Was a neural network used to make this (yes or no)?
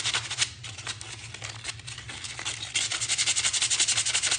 no